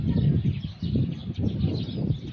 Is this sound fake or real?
real